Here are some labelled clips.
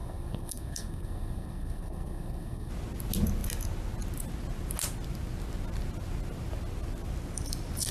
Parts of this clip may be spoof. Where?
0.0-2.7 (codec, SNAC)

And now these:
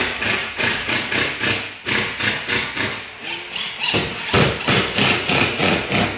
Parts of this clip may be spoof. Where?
0.4-1.1 (vocoder, Vocos); 5.1-5.8

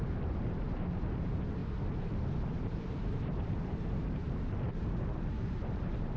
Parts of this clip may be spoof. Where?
0.0-1.6 (vocoder, BigVGAN v2); 2.4-6.2